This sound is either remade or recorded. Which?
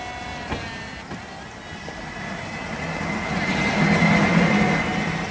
recorded